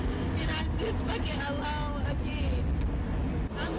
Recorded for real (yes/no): yes